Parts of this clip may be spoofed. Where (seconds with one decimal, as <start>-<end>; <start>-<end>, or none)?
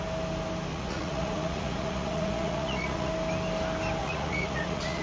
0.7-3.1; 4.0-5.0